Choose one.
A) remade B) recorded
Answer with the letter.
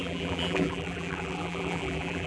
A